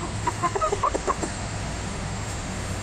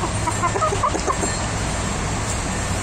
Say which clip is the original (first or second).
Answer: second